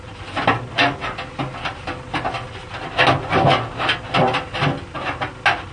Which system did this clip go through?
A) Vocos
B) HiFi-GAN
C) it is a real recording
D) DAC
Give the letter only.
C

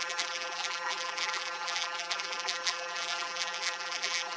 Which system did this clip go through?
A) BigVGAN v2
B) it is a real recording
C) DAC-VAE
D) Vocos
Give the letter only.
A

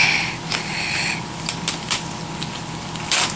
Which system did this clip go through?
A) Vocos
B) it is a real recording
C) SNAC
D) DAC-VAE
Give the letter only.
B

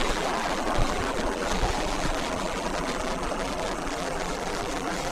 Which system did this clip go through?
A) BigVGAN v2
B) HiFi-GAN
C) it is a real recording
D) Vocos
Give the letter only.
A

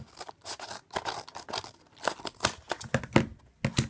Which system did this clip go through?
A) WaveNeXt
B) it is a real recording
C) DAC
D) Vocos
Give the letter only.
B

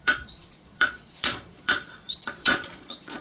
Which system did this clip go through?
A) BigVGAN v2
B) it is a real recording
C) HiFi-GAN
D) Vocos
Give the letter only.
D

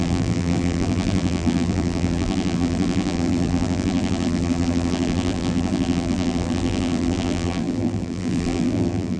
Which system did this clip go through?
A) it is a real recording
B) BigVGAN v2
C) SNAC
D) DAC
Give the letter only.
B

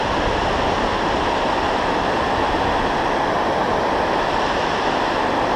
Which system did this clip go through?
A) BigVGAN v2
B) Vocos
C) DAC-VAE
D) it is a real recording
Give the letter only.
A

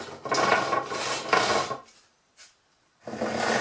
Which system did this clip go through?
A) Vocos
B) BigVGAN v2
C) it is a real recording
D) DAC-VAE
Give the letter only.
C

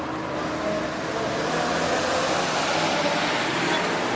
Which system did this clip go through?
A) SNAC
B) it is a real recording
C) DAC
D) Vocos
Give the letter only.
B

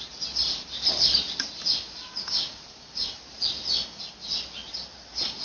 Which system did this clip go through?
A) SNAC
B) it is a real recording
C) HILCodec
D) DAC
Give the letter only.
B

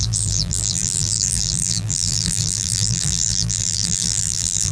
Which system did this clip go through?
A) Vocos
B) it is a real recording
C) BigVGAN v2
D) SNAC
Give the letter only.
C